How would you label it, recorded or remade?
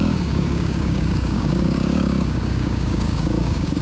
remade